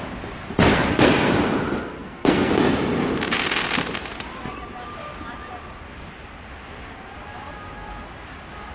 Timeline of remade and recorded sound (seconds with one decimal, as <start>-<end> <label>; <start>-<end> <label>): 0.0-0.7 recorded; 0.7-1.3 remade; 1.3-1.8 recorded; 1.8-2.5 remade; 2.5-8.7 recorded